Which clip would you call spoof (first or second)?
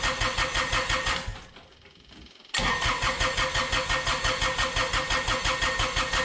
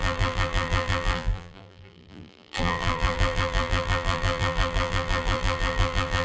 second